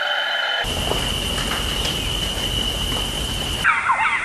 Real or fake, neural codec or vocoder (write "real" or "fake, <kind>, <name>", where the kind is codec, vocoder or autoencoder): real